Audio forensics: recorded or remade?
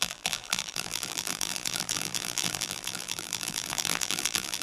remade